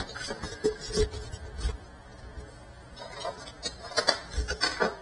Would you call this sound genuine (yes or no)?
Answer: yes